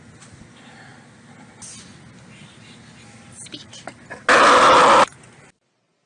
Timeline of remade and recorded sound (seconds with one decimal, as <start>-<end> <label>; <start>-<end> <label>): 0.0-6.1 recorded